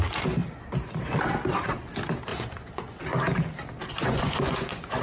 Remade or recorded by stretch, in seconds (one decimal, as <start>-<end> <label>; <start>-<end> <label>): 0.0-2.3 recorded; 2.3-3.0 remade; 3.0-3.9 recorded; 3.9-5.0 remade